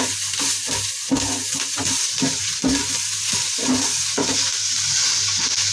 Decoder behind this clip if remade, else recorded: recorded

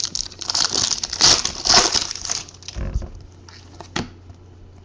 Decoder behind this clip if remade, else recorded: recorded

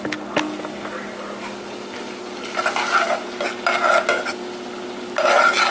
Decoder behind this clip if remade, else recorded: recorded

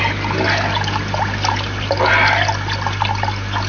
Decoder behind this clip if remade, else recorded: recorded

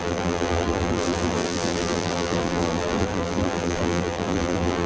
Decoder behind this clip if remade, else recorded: remade, vocoder, BigVGAN v2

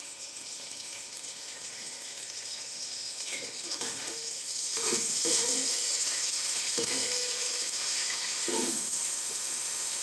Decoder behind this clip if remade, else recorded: remade, autoencoder, DAC-VAE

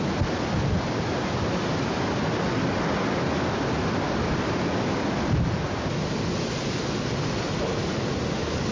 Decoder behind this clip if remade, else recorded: recorded